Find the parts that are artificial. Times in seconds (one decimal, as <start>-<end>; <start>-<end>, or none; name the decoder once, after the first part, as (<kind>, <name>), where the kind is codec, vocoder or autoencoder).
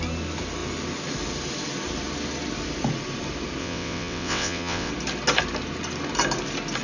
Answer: 3.6-4.9 (vocoder, WaveNeXt)